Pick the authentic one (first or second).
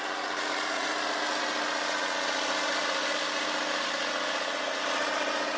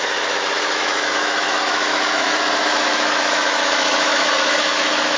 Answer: first